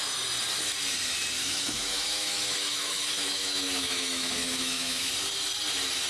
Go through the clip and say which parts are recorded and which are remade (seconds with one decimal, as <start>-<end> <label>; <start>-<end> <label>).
0.0-1.4 recorded; 1.4-5.1 remade; 5.1-6.1 recorded